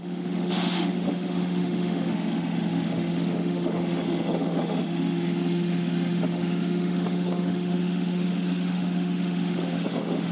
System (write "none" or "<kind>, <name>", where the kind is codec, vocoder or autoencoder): autoencoder, DAC-VAE